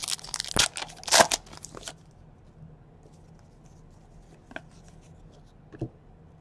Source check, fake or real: real